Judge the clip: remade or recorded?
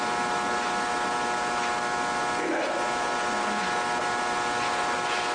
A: recorded